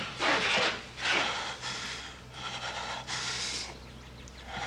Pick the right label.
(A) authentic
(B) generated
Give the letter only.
A